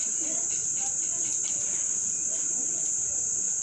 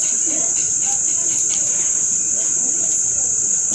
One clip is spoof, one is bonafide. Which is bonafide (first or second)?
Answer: first